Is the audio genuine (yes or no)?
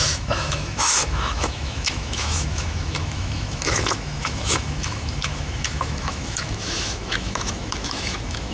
no